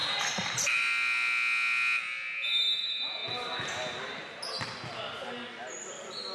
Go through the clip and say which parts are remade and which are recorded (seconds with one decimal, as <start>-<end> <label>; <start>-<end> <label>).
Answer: 0.0-6.3 recorded